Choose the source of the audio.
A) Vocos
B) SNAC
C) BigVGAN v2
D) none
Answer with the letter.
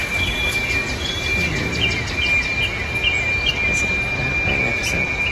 D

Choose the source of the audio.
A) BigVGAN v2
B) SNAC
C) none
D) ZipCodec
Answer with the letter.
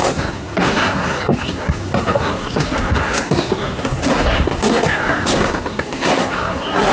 B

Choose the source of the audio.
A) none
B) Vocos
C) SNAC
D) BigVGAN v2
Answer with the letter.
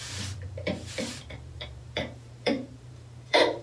D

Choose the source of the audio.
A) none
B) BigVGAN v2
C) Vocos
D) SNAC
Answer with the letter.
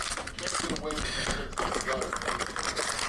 A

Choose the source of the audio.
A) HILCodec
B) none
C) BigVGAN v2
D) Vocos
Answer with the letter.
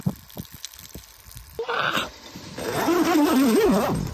B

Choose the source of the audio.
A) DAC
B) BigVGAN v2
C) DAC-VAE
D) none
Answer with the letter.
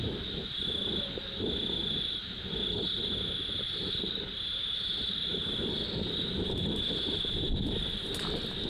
D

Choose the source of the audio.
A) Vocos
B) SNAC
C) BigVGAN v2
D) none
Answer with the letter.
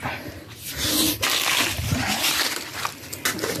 D